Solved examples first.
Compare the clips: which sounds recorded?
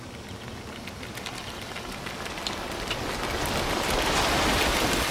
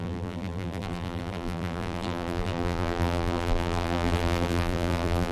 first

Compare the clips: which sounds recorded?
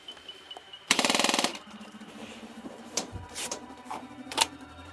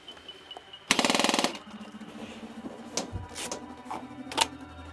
second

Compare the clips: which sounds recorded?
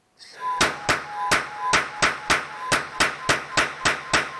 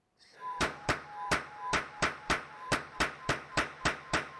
first